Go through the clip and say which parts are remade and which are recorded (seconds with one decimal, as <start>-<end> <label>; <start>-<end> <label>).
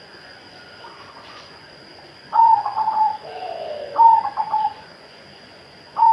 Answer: 0.0-6.1 remade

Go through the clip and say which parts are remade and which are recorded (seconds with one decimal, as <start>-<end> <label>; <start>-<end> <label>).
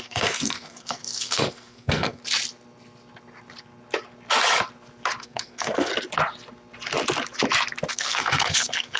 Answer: 0.0-2.2 remade; 2.2-5.2 recorded; 5.2-5.9 remade; 5.9-7.9 recorded; 7.9-9.0 remade